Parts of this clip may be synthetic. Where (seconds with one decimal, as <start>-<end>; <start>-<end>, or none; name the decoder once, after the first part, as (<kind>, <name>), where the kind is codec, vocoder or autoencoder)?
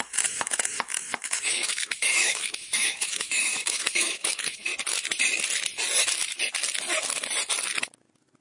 0.0-4.7 (autoencoder, DAC-VAE)